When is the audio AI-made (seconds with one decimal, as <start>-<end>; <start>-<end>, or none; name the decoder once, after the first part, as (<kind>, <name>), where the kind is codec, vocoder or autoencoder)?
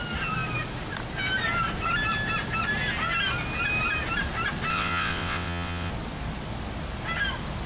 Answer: 4.7-5.9 (vocoder, WaveNeXt)